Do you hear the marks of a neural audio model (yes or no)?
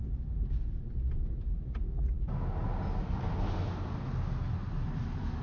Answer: no